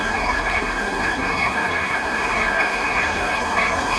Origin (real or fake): fake